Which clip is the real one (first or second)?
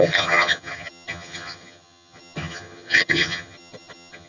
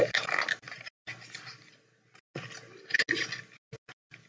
second